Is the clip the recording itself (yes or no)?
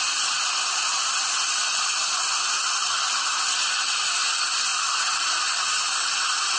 yes